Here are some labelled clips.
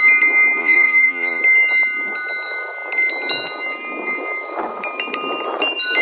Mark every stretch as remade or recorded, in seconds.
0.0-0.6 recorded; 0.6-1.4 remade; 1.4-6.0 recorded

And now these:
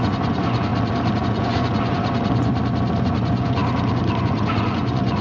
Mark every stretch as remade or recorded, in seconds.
0.0-0.7 remade; 0.7-1.2 recorded; 1.2-2.5 remade; 2.5-3.0 recorded; 3.0-3.6 remade; 3.6-4.2 recorded; 4.2-5.2 remade

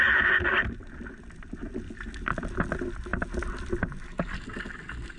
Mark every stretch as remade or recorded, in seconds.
0.0-5.2 recorded